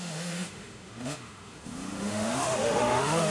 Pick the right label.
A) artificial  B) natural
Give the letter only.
A